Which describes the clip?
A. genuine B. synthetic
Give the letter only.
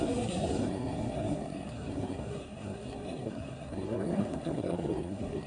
B